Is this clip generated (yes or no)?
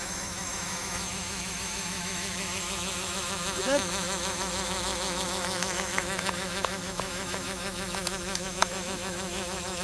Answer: yes